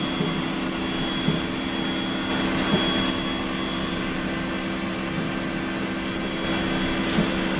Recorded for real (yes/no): yes